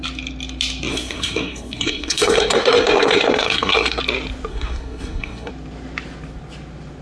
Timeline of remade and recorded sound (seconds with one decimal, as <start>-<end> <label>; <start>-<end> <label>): 0.0-0.9 recorded; 0.9-4.0 remade; 4.0-4.5 recorded; 4.5-5.5 remade; 5.5-7.0 recorded